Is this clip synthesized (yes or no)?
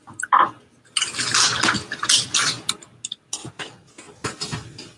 no